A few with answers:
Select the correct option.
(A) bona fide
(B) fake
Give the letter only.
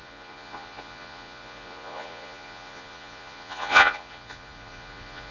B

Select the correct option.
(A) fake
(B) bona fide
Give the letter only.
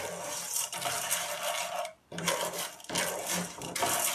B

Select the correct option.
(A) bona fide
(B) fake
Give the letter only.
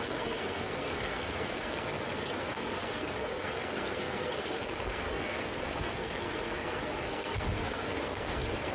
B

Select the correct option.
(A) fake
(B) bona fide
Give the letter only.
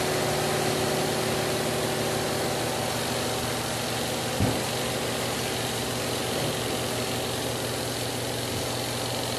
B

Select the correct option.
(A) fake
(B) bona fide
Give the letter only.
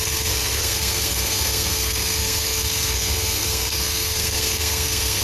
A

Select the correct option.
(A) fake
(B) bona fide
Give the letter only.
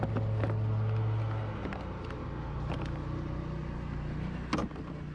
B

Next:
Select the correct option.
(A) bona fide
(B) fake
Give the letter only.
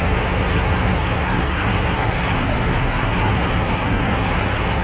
B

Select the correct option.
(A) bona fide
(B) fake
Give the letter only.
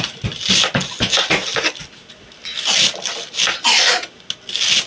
A